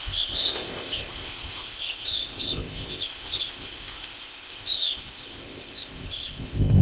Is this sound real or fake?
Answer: fake